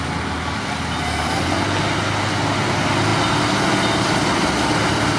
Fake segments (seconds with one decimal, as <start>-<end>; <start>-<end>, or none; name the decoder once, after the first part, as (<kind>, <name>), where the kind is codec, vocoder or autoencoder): none